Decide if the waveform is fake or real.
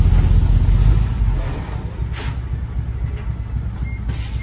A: real